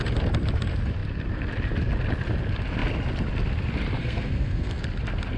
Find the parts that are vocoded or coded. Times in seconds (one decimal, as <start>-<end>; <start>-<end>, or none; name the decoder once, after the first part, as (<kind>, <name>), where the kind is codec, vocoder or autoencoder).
4.0-4.8 (codec, SNAC)